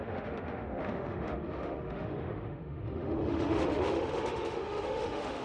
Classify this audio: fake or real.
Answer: fake